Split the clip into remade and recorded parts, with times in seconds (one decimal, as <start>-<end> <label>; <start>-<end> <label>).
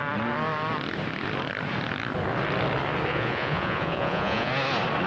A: 0.0-3.1 recorded; 3.1-4.5 remade; 4.5-5.1 recorded